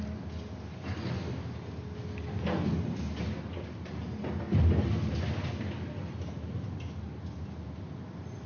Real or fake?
real